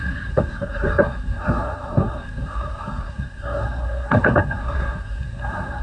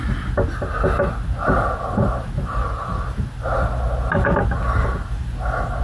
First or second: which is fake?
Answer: first